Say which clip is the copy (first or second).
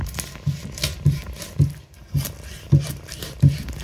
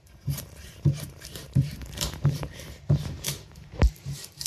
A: second